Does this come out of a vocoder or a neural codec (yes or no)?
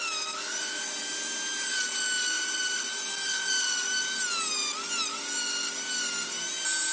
no